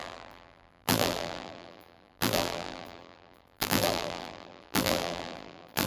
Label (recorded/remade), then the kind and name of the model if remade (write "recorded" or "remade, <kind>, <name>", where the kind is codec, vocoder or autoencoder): remade, vocoder, BigVGAN v2